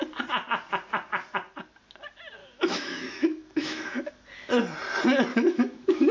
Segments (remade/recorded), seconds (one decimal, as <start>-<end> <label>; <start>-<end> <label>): 0.0-2.4 recorded; 2.4-4.1 remade; 4.1-5.3 recorded; 5.3-6.1 remade